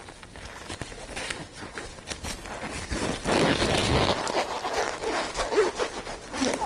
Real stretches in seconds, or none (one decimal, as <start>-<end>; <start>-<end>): 0.0-6.7